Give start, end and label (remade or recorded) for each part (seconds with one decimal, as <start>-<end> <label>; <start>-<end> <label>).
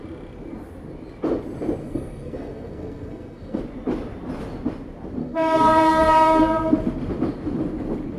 0.0-1.8 recorded; 1.8-3.6 remade; 3.6-5.2 recorded; 5.2-6.7 remade; 6.7-8.2 recorded